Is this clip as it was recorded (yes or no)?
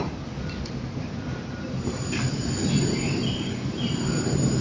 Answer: yes